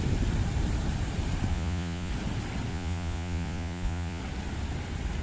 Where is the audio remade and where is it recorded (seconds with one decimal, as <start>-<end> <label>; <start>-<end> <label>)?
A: 0.0-1.5 recorded; 1.5-2.1 remade; 2.1-2.7 recorded; 2.7-4.2 remade; 4.2-5.2 recorded

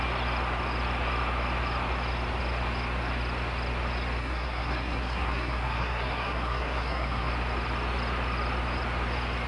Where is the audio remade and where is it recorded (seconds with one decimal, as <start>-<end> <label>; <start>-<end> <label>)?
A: 0.0-4.2 recorded; 4.2-7.3 remade; 7.3-9.5 recorded

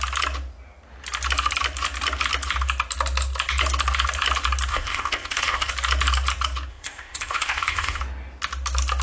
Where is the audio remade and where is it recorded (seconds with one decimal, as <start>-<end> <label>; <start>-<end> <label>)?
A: 0.0-4.7 recorded; 4.7-5.7 remade; 5.7-6.7 recorded; 6.7-8.0 remade; 8.0-9.0 recorded

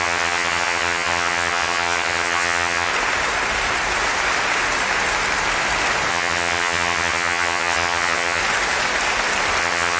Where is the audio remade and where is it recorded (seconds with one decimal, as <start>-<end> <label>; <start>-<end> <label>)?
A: 0.0-2.9 remade; 2.9-6.1 recorded; 6.1-8.4 remade; 8.4-9.6 recorded; 9.6-10.0 remade

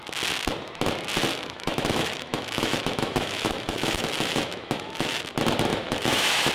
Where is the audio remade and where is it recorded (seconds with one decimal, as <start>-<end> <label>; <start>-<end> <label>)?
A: 0.0-1.3 recorded; 1.3-5.2 remade; 5.2-5.7 recorded; 5.7-6.5 remade

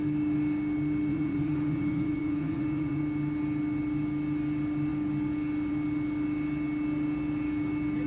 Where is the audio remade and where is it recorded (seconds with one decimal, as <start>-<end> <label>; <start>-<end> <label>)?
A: 0.0-1.1 recorded; 1.1-3.0 remade; 3.0-8.1 recorded